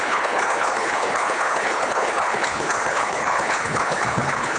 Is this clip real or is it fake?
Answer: fake